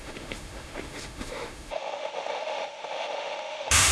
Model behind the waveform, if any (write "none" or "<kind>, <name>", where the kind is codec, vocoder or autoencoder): autoencoder, DAC-VAE